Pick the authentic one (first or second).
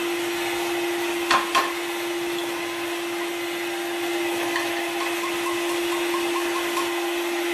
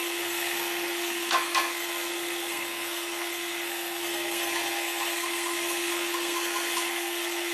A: first